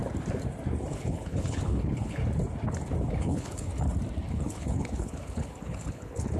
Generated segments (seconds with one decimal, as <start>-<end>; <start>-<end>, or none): 0.9-2.2; 3.1-3.7; 4.3-6.4